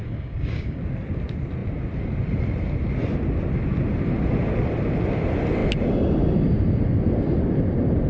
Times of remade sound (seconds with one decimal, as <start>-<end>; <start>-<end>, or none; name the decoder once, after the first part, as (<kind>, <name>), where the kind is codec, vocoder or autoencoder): 0.0-0.8 (codec, DAC)